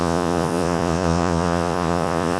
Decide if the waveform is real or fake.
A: fake